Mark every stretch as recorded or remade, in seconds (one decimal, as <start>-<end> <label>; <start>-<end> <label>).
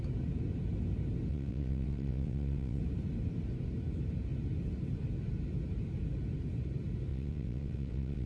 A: 0.0-1.3 recorded; 1.3-2.8 remade; 2.8-7.1 recorded; 7.1-8.3 remade